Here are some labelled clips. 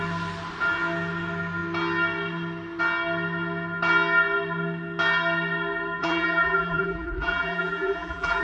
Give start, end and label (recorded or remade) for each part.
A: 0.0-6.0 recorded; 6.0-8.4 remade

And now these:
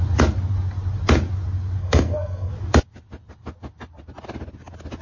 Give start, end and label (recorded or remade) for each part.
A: 0.0-1.8 recorded; 1.8-2.5 remade; 2.5-5.0 recorded